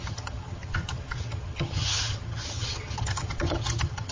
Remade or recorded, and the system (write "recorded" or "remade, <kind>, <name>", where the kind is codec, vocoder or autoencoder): remade, vocoder, HiFi-GAN